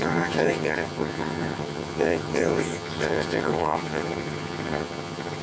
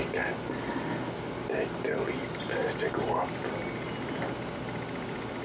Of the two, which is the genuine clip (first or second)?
second